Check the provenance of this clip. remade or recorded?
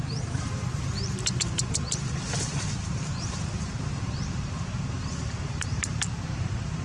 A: remade